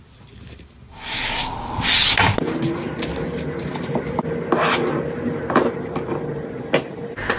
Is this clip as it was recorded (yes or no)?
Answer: yes